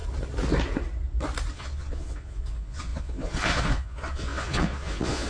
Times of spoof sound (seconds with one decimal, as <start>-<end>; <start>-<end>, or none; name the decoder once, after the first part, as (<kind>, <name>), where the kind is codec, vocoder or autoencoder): 1.5-5.3 (vocoder, Vocos)

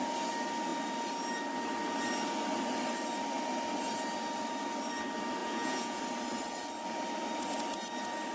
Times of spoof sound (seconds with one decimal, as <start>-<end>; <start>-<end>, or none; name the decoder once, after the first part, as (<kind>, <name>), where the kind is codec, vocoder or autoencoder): 5.4-6.0 (vocoder, Vocos)

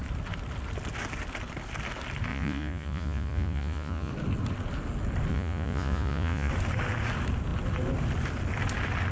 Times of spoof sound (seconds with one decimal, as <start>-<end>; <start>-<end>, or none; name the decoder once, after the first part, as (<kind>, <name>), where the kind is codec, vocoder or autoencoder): 2.3-4.1 (vocoder, Vocos); 5.3-6.5

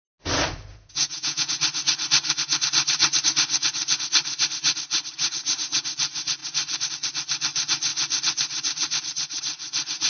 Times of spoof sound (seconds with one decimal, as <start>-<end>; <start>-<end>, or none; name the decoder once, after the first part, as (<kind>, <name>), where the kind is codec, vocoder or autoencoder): 0.7-1.6 (vocoder, Vocos)